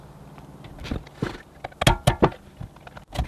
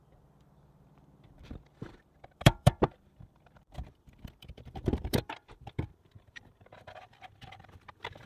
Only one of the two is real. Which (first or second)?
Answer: first